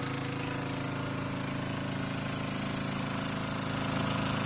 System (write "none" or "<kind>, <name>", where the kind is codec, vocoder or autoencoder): none